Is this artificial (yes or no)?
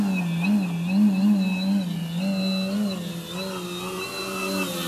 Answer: no